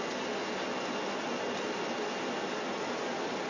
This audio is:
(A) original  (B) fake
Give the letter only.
A